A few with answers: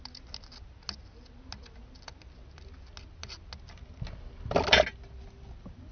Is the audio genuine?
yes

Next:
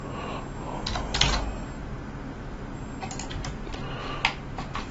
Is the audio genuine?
yes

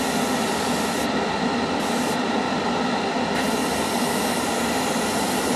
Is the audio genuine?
yes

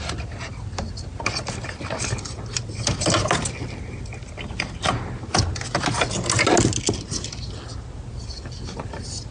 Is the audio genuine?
yes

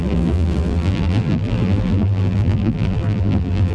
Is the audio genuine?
no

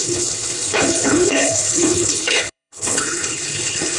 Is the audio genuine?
no